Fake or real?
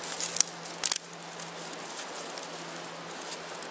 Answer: real